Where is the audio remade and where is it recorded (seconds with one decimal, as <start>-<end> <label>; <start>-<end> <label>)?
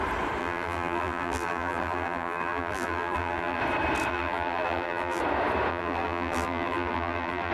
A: 0.0-0.4 recorded; 0.4-3.6 remade; 3.6-4.1 recorded; 4.1-5.2 remade; 5.2-5.7 recorded; 5.7-7.5 remade